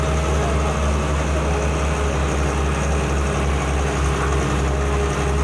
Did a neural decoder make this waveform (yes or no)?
no